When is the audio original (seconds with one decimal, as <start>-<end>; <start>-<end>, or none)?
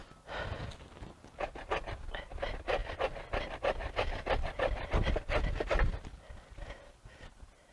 0.0-2.8; 6.2-7.7